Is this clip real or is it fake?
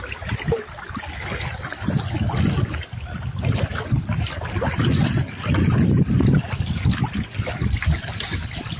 real